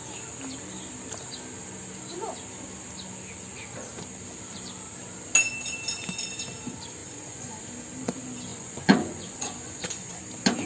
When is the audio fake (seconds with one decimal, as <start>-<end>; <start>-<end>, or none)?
7.0-7.6; 8.5-10.2